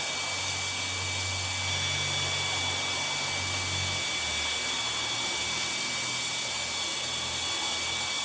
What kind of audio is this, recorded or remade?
recorded